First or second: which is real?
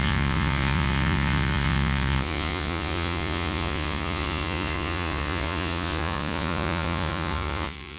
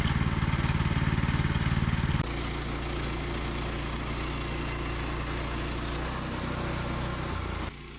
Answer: second